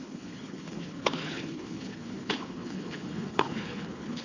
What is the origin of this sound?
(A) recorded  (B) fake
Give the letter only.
B